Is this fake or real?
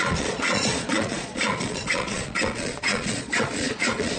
fake